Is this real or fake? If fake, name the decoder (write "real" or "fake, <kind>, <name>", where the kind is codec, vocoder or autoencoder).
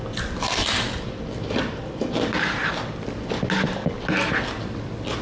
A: real